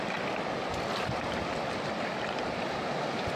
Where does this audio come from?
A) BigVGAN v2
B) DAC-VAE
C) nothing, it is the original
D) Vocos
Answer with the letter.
C